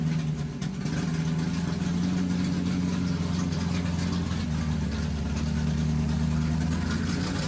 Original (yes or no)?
yes